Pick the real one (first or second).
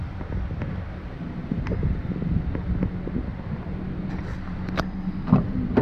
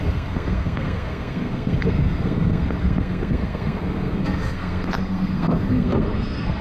first